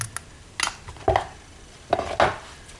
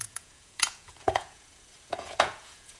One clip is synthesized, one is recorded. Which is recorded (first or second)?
first